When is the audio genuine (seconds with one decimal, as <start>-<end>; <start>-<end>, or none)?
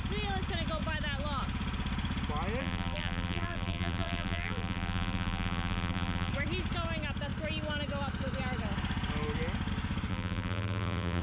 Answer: 0.0-2.6; 6.3-10.1